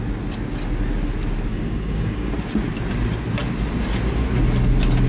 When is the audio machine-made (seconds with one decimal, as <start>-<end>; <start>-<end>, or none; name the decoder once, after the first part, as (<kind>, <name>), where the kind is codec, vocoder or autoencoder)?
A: 1.5-2.3 (codec, DAC)